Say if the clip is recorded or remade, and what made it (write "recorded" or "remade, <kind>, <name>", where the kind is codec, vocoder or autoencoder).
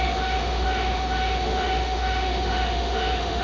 remade, autoencoder, DAC-VAE